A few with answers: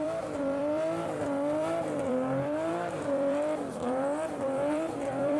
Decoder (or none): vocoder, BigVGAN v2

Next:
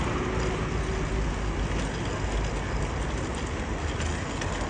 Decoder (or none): none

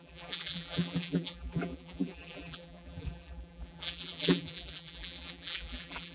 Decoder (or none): vocoder, BigVGAN v2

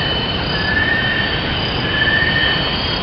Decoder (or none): none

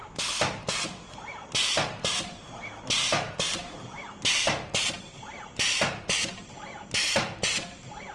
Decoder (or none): vocoder, BigVGAN v2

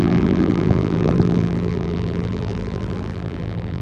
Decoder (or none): vocoder, BigVGAN v2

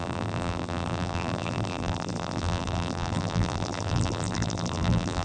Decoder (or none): vocoder, BigVGAN v2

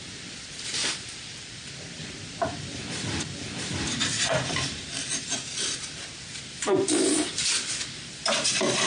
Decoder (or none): vocoder, BigVGAN v2